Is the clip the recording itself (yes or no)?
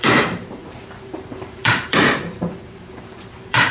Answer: no